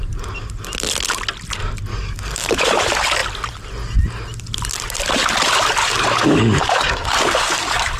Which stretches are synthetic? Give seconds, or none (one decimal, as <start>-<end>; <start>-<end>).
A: 1.9-2.6; 5.8-8.0